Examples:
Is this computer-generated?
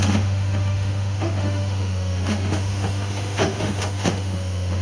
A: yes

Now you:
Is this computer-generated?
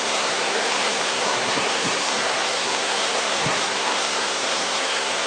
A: yes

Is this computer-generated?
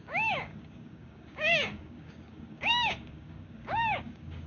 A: yes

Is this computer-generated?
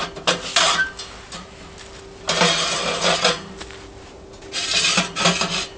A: no